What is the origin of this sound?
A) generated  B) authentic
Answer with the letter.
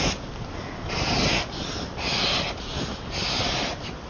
B